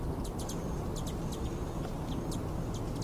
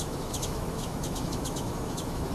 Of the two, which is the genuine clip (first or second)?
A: first